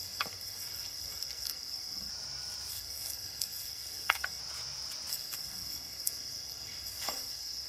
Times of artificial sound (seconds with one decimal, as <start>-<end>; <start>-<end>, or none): 0.0-2.1; 2.7-4.4; 5.1-7.7